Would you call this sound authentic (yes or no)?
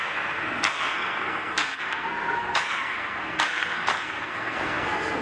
no